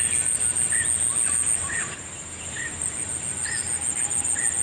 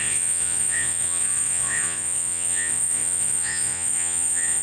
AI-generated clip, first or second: second